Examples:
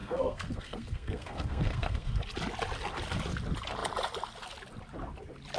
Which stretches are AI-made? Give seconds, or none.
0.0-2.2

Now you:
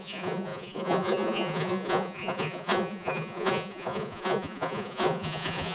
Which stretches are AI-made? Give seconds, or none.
0.0-5.7

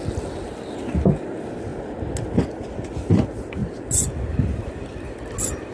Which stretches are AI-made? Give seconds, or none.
none

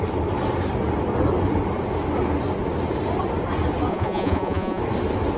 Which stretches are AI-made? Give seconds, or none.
3.9-4.8

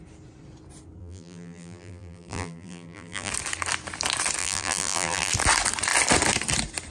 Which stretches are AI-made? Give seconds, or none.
1.0-3.3; 4.4-5.3